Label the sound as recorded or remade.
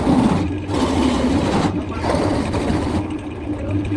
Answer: recorded